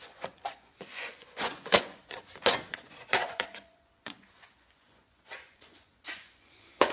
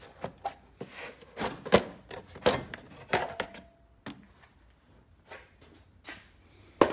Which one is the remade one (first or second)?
first